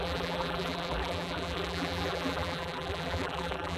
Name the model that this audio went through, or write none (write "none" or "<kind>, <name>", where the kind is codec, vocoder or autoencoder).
vocoder, BigVGAN v2